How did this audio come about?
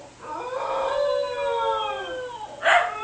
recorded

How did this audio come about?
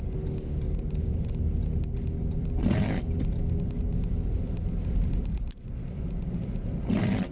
recorded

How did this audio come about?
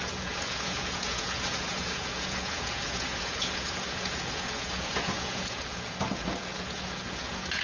remade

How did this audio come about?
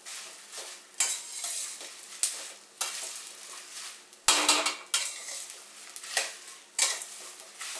recorded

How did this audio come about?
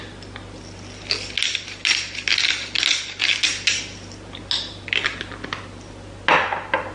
recorded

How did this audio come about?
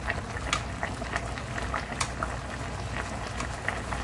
recorded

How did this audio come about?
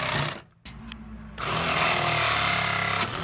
recorded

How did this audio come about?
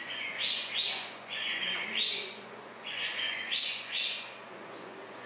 remade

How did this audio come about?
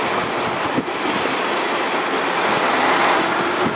recorded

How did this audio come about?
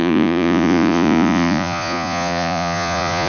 remade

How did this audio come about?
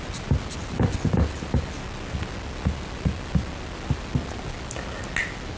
recorded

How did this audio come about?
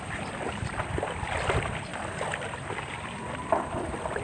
recorded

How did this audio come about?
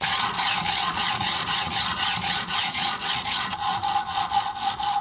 remade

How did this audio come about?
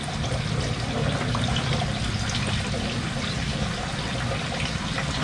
recorded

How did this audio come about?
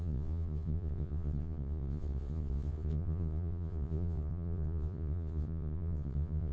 remade